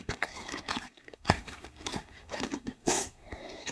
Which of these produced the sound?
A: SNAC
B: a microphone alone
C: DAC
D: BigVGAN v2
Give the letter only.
A